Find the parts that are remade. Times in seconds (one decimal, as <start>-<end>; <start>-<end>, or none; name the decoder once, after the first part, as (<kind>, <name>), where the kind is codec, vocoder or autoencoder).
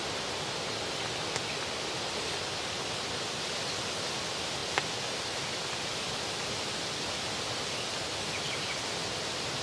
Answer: none